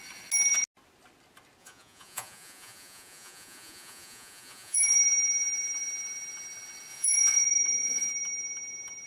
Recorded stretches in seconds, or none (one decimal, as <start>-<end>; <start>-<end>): 0.0-1.6; 5.0-6.9; 8.1-9.1